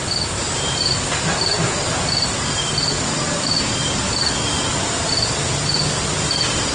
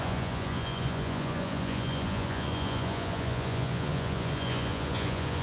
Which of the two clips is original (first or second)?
first